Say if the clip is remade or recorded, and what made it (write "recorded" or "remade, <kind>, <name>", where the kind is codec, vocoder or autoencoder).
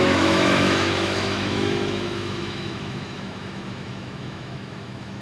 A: remade, autoencoder, DAC-VAE